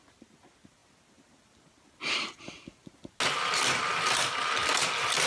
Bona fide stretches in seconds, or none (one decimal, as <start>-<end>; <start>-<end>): 0.0-5.3